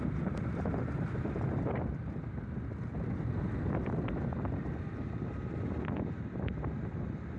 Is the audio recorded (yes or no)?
yes